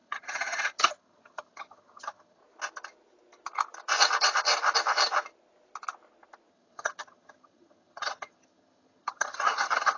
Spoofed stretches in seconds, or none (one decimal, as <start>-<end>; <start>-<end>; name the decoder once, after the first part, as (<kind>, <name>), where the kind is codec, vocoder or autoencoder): 0.0-2.4 (vocoder, HiFi-GAN); 6.5-10.0